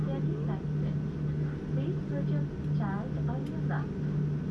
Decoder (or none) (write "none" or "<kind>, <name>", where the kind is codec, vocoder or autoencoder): none